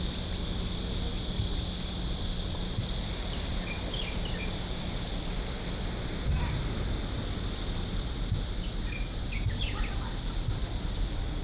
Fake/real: real